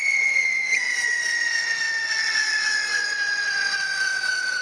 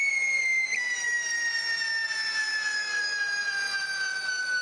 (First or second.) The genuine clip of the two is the second